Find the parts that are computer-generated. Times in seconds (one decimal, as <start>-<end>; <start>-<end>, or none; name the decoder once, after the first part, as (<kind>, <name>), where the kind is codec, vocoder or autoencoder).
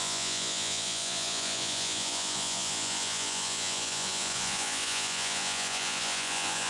0.0-6.7 (vocoder, Vocos)